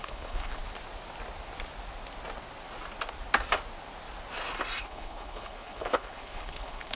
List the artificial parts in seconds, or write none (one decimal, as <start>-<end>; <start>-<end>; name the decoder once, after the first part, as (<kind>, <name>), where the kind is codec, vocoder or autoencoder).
0.0-0.6 (codec, HILCodec); 4.8-7.0